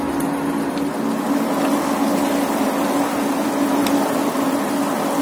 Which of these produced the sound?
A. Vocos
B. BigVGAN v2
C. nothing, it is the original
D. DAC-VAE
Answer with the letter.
C